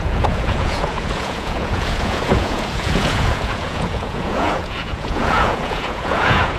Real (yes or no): no